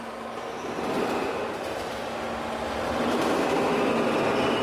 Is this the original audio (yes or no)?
no